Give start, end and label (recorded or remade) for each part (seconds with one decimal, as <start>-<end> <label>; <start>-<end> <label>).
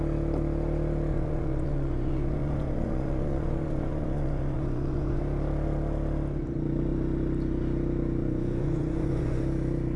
0.0-1.1 recorded; 1.1-5.2 remade; 5.2-8.2 recorded; 8.2-9.4 remade; 9.4-10.0 recorded